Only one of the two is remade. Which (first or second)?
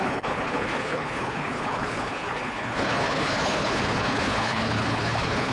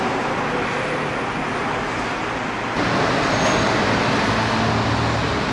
first